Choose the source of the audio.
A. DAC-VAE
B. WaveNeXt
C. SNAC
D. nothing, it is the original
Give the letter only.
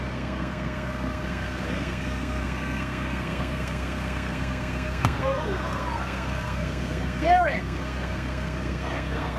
C